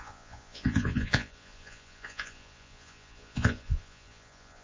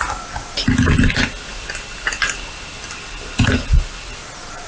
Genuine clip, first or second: second